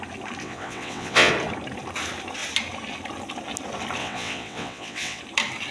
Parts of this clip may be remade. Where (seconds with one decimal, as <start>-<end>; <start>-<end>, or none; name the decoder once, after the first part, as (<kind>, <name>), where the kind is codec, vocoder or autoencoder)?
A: 0.4-1.3 (vocoder, WaveNeXt); 4.0-5.2